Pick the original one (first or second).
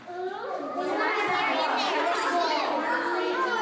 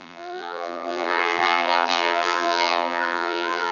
first